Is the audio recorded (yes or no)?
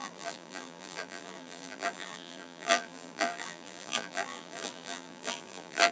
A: no